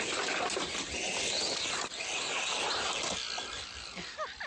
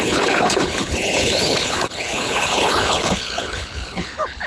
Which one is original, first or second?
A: first